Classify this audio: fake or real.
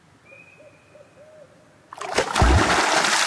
real